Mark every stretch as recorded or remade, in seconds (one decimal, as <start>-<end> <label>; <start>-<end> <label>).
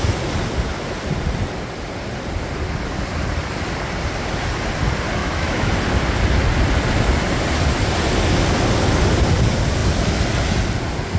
0.0-5.2 recorded; 5.2-5.7 remade; 5.7-11.2 recorded